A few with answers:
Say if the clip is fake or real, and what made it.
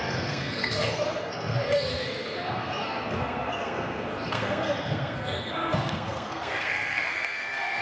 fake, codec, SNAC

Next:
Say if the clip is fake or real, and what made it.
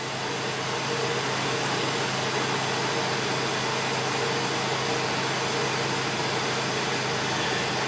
real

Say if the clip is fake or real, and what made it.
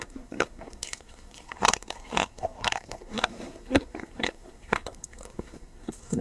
fake, codec, SNAC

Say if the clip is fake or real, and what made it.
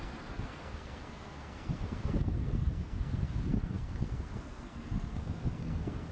fake, codec, SNAC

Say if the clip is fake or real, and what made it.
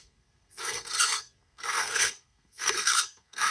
fake, codec, SNAC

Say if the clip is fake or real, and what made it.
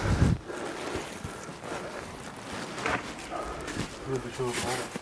real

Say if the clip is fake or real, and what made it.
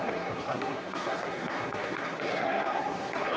fake, codec, SNAC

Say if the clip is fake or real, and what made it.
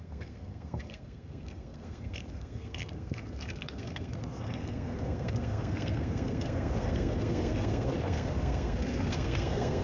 fake, codec, SNAC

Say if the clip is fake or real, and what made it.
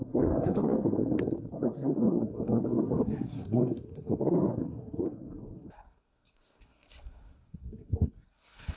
fake, codec, SNAC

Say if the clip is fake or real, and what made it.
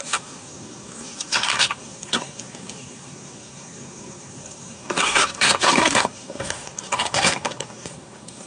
fake, codec, SNAC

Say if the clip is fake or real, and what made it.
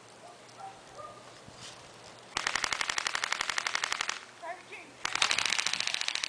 real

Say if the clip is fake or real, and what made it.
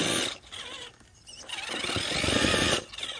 real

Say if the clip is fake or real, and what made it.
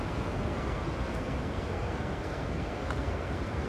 fake, codec, SNAC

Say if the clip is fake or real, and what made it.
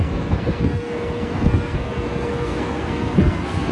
fake, codec, SNAC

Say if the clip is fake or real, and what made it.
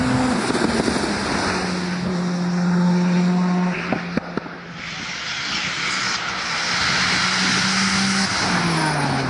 real